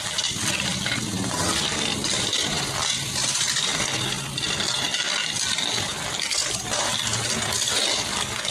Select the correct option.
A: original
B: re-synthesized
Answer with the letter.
A